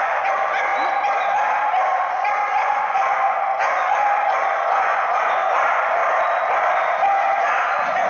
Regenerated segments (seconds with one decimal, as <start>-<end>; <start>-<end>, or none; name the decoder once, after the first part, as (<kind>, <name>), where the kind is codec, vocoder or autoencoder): 0.0-0.7 (vocoder, Vocos); 2.1-6.0; 7.4-8.1